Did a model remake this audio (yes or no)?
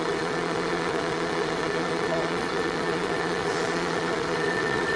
yes